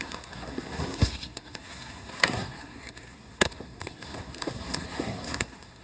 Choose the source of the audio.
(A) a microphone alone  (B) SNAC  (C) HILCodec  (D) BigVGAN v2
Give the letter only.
B